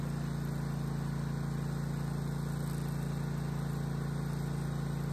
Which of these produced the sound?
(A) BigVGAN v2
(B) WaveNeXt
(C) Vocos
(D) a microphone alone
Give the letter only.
D